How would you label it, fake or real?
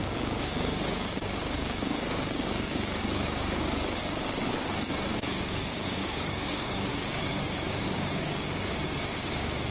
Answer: fake